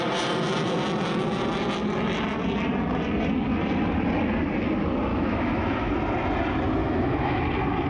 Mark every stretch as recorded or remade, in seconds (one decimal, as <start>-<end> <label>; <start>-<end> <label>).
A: 0.0-5.1 recorded; 5.1-5.9 remade; 5.9-6.8 recorded; 6.8-7.4 remade; 7.4-7.9 recorded